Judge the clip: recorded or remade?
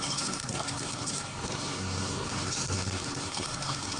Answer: remade